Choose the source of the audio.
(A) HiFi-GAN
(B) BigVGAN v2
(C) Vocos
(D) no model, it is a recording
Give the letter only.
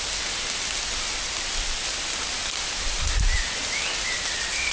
D